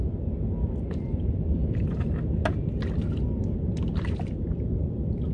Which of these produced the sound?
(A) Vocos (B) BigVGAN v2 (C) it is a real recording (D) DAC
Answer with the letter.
C